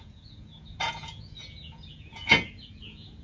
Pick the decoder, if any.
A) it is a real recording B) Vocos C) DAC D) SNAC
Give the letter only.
B